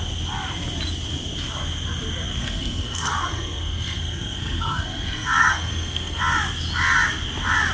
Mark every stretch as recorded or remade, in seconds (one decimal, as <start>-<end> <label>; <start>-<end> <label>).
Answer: 0.0-2.4 recorded; 2.4-6.2 remade; 6.2-7.7 recorded